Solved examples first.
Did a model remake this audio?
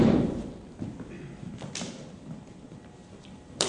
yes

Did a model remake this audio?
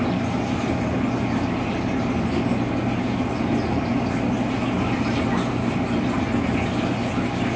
no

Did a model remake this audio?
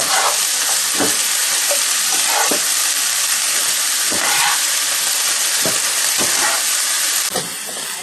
yes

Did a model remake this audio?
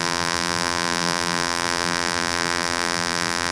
yes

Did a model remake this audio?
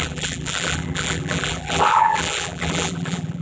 yes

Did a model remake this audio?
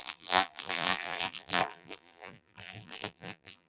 yes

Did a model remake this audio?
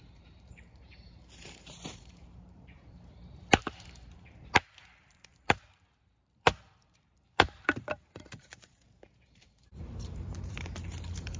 yes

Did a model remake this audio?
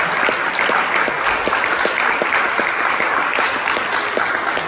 no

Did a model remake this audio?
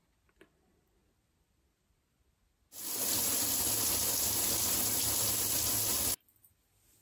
no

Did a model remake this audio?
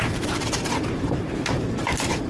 yes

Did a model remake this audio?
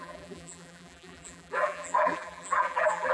yes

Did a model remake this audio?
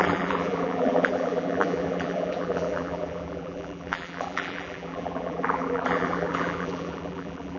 yes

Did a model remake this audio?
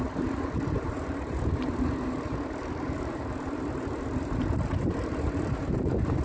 yes